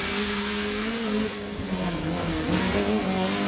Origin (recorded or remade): remade